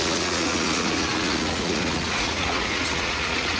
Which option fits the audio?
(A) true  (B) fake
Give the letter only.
B